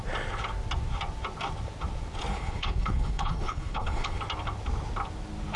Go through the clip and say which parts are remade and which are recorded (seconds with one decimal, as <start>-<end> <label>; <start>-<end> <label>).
0.0-2.3 recorded; 2.3-4.2 remade; 4.2-5.6 recorded